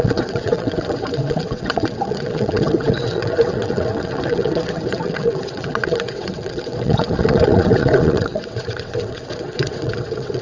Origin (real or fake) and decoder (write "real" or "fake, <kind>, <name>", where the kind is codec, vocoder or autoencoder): fake, vocoder, WaveNeXt